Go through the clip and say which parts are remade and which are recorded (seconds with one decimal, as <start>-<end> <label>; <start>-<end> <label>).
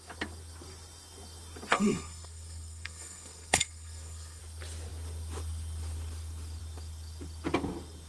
0.0-1.7 recorded; 1.7-4.4 remade; 4.4-8.1 recorded